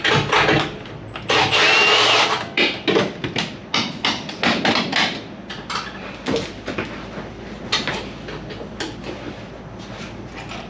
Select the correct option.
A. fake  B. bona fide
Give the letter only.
B